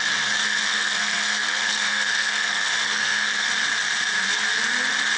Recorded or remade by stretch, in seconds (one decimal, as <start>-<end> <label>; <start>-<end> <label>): 0.0-0.4 recorded; 0.4-3.5 remade; 3.5-5.2 recorded